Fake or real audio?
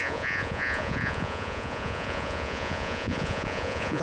fake